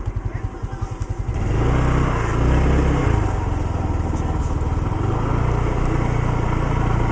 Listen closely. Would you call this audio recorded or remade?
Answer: recorded